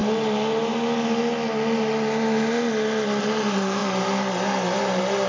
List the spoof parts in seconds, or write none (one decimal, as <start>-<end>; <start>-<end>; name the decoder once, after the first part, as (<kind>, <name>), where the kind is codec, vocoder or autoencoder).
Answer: 3.2-5.3 (vocoder, BigVGAN v2)